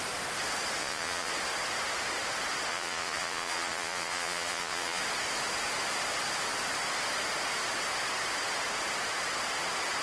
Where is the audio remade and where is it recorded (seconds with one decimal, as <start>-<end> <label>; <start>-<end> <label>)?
0.0-0.8 recorded; 0.8-1.3 remade; 1.3-2.7 recorded; 2.7-5.0 remade; 5.0-10.0 recorded